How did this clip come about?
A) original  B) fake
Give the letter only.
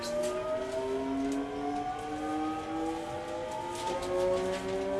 A